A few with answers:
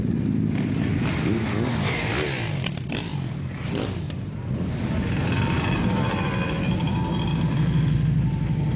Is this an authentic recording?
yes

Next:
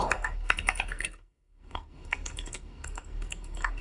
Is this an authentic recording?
no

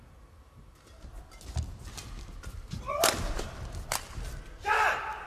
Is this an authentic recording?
yes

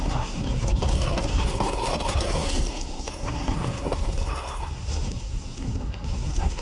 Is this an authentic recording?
no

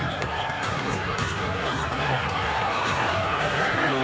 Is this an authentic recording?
no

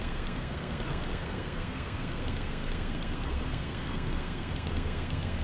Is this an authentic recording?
no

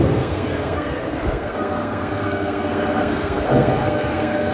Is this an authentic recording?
no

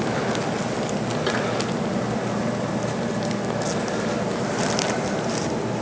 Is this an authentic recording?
yes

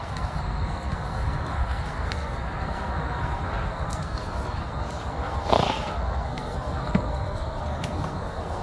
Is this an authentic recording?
no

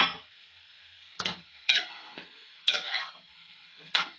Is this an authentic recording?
no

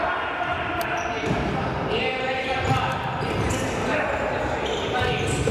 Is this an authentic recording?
yes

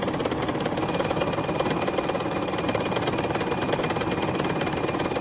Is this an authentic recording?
yes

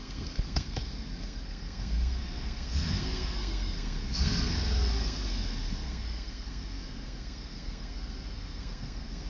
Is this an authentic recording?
no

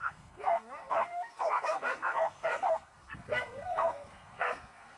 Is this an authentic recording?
no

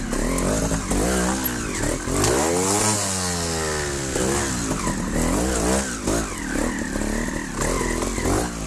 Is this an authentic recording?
yes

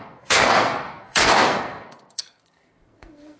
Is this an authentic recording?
no